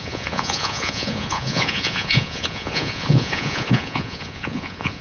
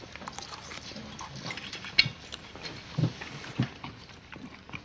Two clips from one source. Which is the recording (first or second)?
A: second